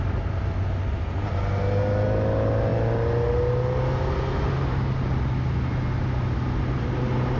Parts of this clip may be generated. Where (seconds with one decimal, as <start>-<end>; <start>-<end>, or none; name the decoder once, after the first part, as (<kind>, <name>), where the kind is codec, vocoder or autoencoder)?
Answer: none